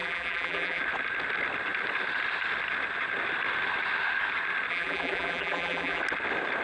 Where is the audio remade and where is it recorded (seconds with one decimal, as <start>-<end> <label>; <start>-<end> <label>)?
0.0-0.8 remade; 0.8-4.7 recorded; 4.7-6.0 remade; 6.0-6.6 recorded